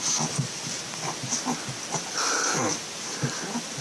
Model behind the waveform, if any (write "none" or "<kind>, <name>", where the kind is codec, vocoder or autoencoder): none